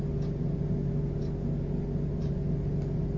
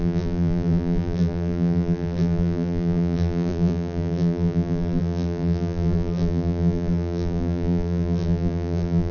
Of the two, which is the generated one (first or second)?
second